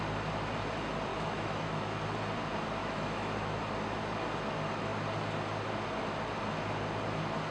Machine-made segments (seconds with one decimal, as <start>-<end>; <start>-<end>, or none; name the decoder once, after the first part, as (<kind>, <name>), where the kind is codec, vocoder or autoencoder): 1.1-2.0 (autoencoder, DAC-VAE); 2.8-3.6